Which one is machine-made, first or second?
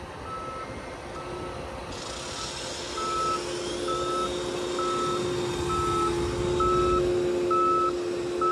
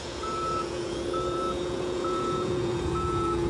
second